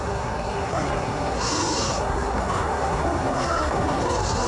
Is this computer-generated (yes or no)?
yes